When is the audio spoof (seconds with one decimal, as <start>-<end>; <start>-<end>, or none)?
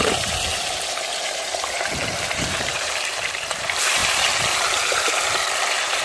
0.0-4.0; 5.6-6.0